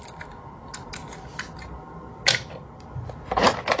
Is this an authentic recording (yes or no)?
yes